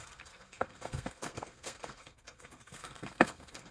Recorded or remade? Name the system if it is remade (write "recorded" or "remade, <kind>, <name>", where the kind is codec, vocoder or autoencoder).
remade, codec, SNAC